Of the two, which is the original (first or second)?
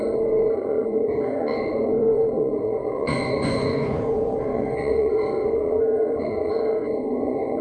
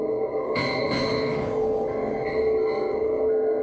second